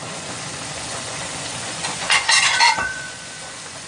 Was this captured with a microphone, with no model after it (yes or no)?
no